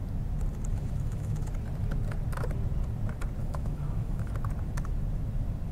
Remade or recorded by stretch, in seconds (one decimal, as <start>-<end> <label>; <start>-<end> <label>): 0.0-0.7 recorded; 0.7-1.5 remade; 1.5-3.4 recorded; 3.4-4.3 remade; 4.3-5.7 recorded